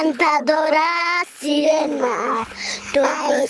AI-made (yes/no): yes